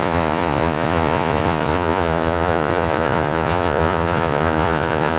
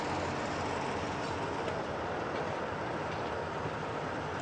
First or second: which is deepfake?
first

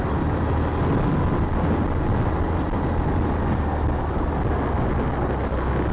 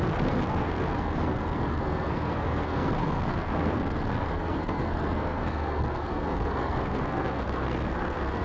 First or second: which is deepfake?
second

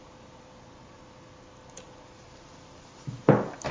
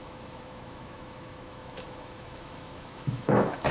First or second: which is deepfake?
second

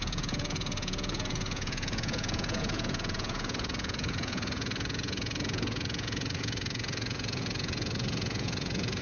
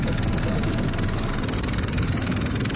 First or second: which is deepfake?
first